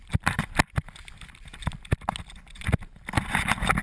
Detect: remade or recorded recorded